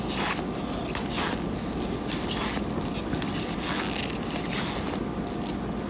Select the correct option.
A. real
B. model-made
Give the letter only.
A